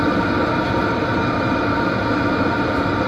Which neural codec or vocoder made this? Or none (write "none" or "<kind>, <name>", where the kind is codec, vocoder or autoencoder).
none